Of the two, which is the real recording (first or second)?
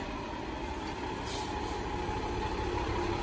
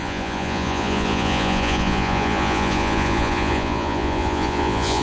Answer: first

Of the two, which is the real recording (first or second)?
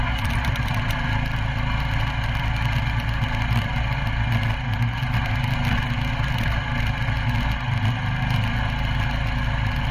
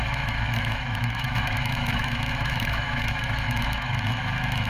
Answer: first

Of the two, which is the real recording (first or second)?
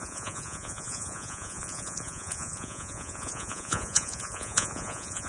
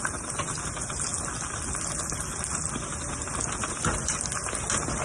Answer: second